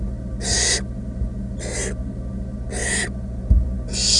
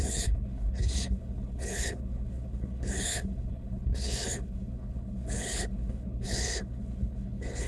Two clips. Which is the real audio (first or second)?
first